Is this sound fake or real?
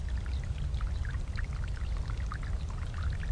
real